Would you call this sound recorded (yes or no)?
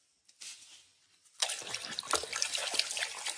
yes